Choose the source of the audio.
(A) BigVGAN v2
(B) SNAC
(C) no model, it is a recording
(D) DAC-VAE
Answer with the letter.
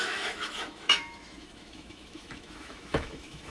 D